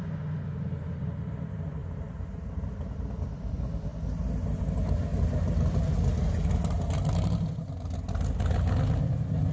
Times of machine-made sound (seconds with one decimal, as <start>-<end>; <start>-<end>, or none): none

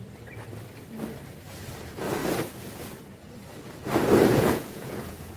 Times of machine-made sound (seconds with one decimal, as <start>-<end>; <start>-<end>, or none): 4.3-5.4

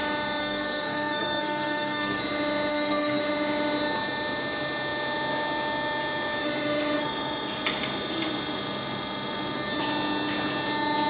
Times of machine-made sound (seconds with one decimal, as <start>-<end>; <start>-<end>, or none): 0.4-2.2; 2.7-3.2

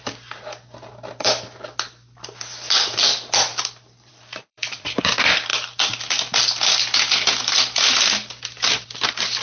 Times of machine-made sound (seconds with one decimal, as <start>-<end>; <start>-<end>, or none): 4.1-5.0

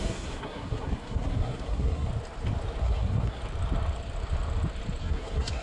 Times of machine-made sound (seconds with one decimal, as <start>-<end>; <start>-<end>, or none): 0.0-2.1; 2.8-3.4; 5.0-5.6